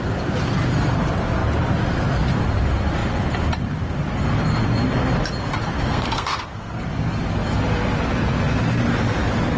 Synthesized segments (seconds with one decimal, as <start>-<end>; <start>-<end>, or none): 5.6-6.8